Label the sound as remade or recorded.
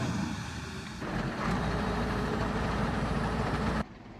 remade